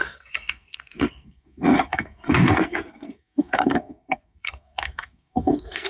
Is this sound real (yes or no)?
no